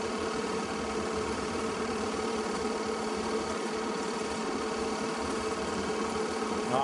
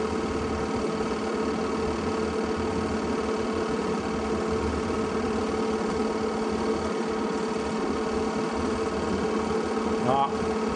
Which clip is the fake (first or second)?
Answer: first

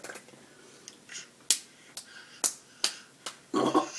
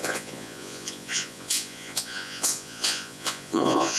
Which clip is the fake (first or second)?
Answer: second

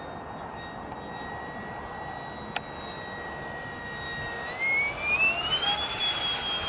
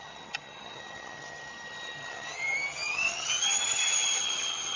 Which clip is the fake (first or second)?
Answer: second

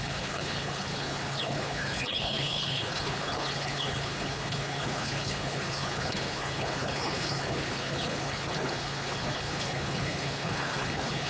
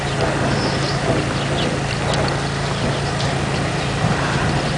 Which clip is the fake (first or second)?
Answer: first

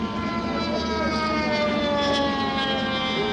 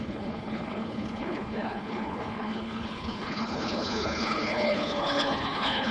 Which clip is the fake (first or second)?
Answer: second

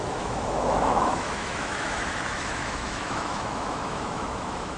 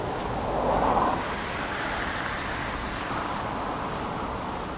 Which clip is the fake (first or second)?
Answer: first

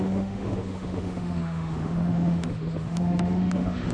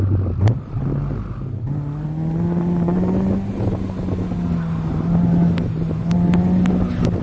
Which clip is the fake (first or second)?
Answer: first